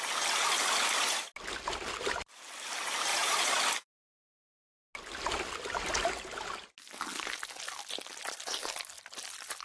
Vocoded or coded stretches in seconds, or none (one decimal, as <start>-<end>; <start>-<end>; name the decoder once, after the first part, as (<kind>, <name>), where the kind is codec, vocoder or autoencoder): 3.1-3.6 (vocoder, Vocos)